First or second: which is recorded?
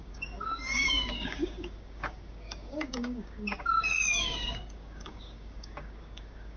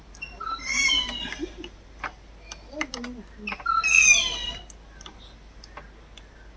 second